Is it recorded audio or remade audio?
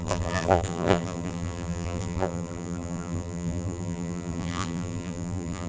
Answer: remade